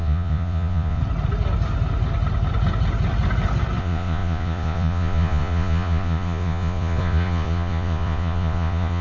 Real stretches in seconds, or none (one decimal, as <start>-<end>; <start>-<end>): 1.0-3.8